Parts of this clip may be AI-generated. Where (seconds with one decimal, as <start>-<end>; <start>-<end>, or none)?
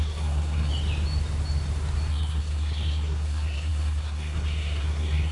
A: 0.0-0.7; 2.1-5.3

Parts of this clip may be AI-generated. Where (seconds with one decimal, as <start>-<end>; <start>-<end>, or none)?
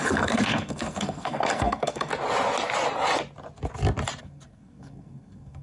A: 0.0-2.1; 4.2-5.6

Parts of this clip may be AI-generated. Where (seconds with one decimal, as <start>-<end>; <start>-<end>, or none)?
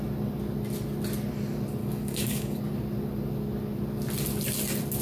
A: 1.8-2.6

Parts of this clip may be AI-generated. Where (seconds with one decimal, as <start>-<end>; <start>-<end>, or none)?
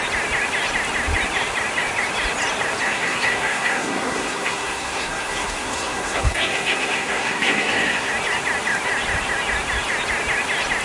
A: 2.8-8.1